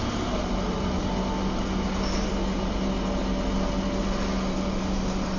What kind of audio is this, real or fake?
real